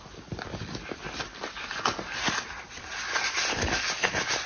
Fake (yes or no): no